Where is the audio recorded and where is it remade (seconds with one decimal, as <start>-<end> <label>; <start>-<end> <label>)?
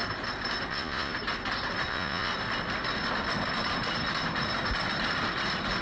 0.0-0.7 recorded; 0.7-1.1 remade; 1.1-1.9 recorded; 1.9-2.3 remade; 2.3-5.8 recorded